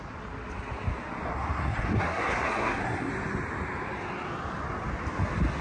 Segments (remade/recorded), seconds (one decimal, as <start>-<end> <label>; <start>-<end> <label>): 0.0-1.3 recorded; 1.3-3.1 remade; 3.1-5.6 recorded